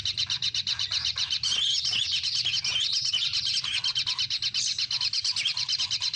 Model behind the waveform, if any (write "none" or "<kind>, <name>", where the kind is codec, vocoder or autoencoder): none